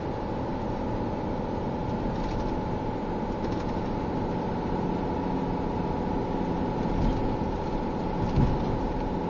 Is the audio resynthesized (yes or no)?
no